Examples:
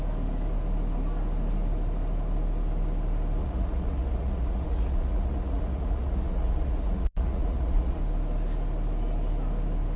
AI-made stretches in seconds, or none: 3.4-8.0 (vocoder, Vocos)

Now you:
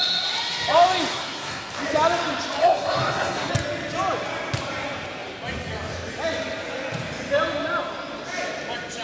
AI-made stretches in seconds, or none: 1.1-1.7 (codec, SNAC); 2.6-3.5

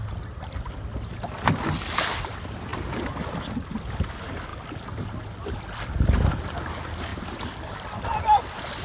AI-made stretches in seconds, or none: none

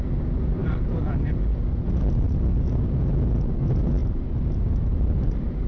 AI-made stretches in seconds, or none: 4.0-5.7 (vocoder, BigVGAN v2)

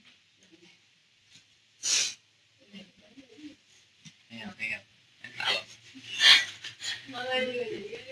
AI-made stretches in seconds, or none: 4.9-5.5 (vocoder, Vocos)